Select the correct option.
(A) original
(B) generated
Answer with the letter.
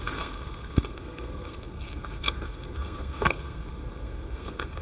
B